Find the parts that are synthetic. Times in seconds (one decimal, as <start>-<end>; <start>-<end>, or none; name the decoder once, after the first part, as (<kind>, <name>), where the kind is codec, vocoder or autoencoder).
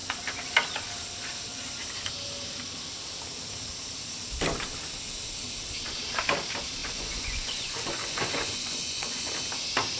6.8-9.3 (vocoder, Vocos)